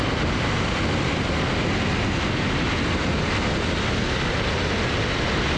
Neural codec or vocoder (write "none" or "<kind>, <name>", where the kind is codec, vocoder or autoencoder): none